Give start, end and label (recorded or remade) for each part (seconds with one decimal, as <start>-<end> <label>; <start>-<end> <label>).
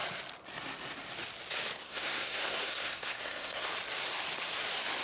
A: 0.0-1.8 recorded; 1.8-3.7 remade; 3.7-5.0 recorded